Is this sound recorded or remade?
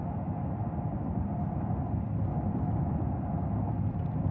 recorded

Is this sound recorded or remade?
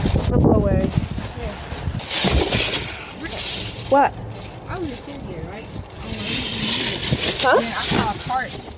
recorded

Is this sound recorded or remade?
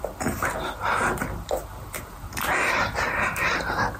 recorded